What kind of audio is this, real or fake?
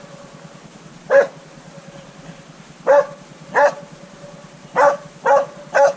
real